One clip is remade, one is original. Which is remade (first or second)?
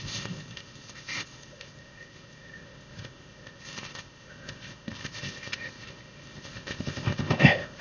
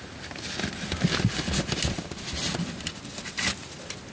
first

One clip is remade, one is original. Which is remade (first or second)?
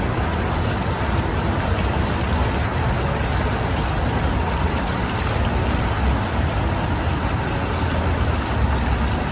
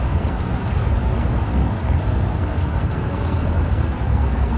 second